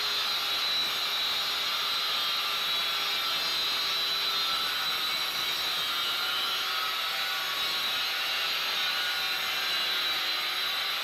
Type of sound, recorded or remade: recorded